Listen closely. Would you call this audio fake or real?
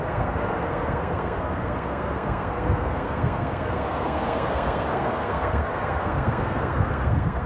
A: fake